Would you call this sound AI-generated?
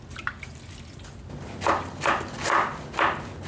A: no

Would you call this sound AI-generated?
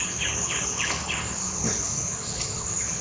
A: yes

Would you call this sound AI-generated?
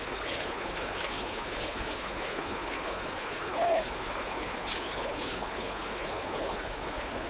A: yes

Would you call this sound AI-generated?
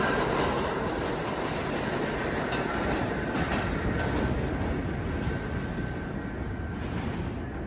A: no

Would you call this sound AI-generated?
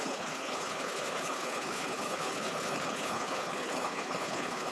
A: yes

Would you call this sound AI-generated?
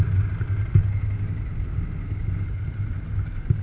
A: no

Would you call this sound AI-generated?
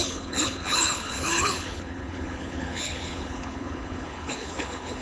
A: yes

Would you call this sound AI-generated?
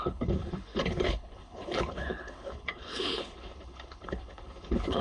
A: yes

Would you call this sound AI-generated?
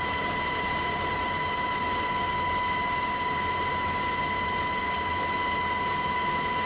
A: no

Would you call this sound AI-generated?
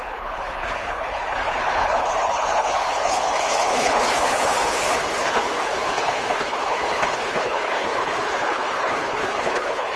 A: yes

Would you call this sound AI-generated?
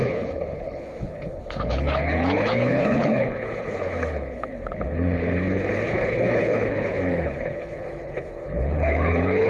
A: yes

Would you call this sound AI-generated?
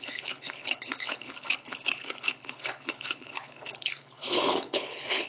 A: yes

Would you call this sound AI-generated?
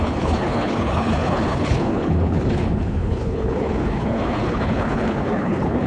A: yes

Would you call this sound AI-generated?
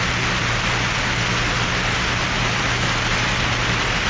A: no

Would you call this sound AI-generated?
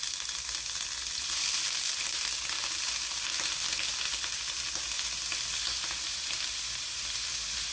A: no